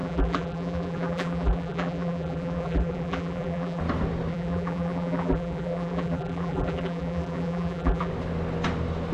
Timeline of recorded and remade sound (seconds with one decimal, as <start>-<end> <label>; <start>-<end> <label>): 0.0-3.8 remade; 3.8-4.3 recorded; 4.3-8.1 remade; 8.1-9.1 recorded